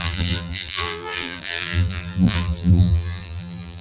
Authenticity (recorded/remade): remade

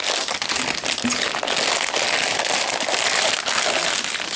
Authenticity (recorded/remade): recorded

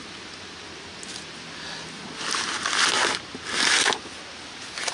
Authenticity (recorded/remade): recorded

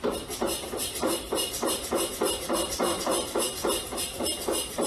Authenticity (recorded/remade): remade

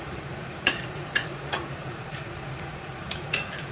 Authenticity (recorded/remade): remade